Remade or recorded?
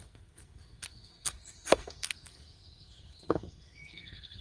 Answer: remade